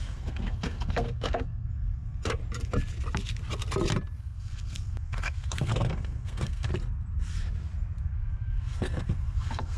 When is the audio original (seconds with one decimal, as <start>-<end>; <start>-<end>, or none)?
2.4-4.2; 6.7-8.0